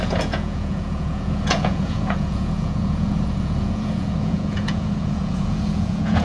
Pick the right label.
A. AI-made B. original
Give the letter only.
A